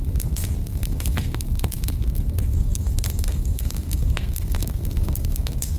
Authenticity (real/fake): fake